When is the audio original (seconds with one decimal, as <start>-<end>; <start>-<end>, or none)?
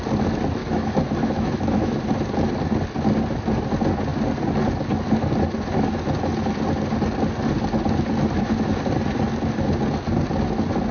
0.0-0.6; 2.0-10.9